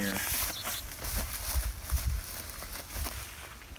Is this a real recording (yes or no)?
yes